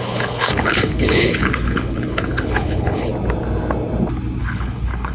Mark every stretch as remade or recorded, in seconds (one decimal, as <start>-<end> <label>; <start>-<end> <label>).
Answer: 0.0-3.1 remade; 3.1-4.4 recorded; 4.4-5.1 remade